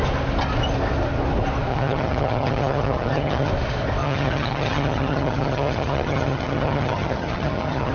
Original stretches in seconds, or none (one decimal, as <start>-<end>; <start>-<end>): 0.0-1.7; 3.5-4.0